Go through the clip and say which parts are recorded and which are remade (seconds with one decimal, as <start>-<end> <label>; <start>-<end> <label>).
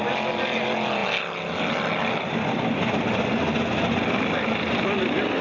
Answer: 0.0-5.4 recorded